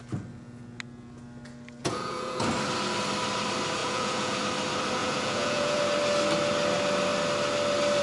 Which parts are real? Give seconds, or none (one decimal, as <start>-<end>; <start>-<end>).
0.0-1.8; 2.4-3.8; 4.4-5.0; 5.8-8.0